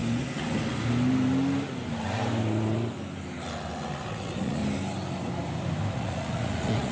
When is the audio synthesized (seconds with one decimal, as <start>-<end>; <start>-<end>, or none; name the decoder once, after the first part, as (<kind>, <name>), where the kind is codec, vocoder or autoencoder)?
4.1-4.6 (vocoder, Vocos); 5.9-6.9